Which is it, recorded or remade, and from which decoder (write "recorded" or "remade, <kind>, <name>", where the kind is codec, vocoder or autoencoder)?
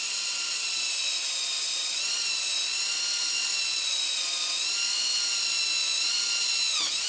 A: recorded